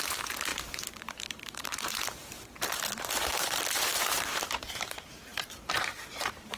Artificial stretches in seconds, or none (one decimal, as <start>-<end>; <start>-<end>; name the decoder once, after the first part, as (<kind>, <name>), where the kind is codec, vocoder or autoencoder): 0.0-6.6 (vocoder, BigVGAN v2)